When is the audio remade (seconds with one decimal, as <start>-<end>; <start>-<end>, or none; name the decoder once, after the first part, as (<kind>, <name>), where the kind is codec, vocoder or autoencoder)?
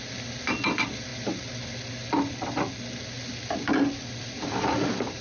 none